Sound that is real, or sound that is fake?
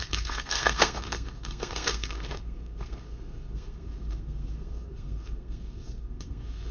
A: fake